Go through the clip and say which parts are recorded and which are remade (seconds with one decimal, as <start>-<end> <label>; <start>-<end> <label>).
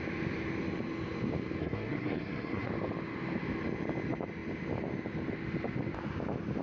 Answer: 0.0-1.6 recorded; 1.6-2.7 remade; 2.7-6.6 recorded